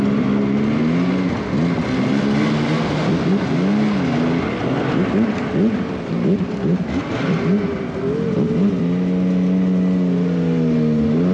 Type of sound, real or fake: real